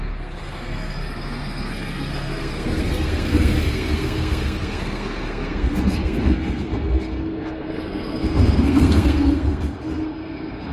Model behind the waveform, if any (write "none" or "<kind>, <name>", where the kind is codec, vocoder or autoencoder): codec, SNAC